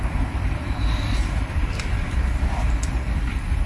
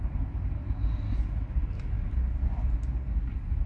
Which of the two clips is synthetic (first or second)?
first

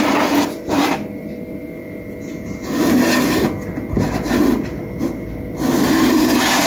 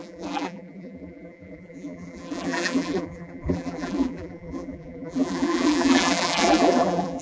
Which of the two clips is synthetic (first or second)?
second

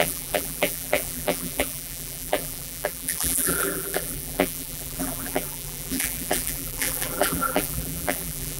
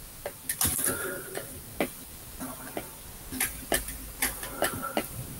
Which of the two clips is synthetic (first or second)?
first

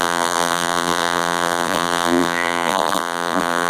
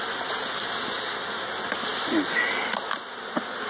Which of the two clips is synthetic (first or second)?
first